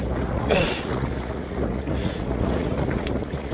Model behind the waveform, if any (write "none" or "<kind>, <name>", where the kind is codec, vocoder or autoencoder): vocoder, Vocos